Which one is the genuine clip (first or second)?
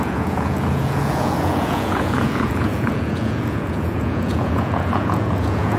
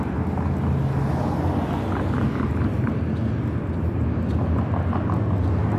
second